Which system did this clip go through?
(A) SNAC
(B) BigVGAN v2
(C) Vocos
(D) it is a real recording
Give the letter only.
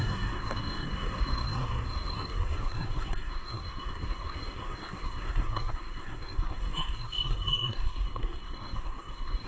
A